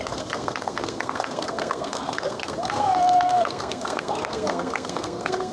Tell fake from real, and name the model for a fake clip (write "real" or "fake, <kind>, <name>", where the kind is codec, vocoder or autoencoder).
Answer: fake, codec, SNAC